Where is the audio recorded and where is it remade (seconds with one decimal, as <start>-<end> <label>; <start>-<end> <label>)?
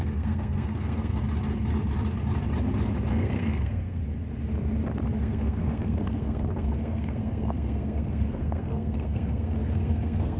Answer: 0.0-1.1 remade; 1.1-3.1 recorded; 3.1-4.0 remade; 4.0-5.2 recorded; 5.2-10.4 remade